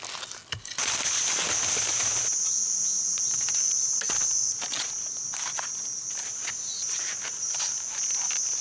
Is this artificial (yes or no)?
no